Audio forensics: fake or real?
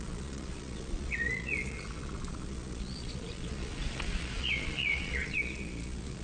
fake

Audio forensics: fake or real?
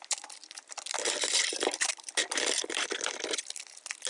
fake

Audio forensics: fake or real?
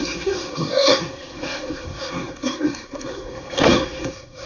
fake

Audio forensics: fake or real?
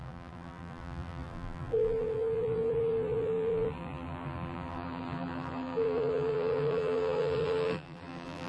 fake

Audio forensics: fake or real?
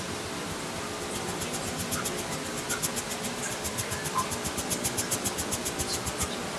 real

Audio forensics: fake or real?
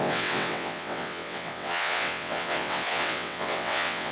fake